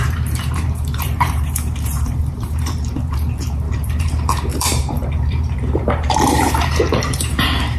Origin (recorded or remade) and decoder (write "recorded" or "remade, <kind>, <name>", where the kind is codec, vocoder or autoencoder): remade, vocoder, BigVGAN v2